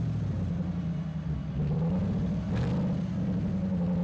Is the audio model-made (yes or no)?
yes